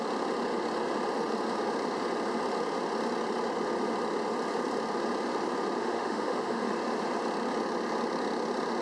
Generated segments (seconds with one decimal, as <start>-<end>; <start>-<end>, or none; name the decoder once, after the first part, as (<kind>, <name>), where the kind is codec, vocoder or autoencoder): 5.8-6.7 (autoencoder, DAC-VAE)